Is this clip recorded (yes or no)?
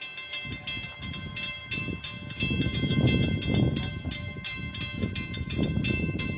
yes